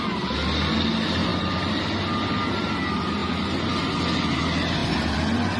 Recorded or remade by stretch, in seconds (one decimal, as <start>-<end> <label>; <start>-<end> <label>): 0.0-1.3 recorded; 1.3-1.8 remade; 1.8-4.8 recorded; 4.8-5.6 remade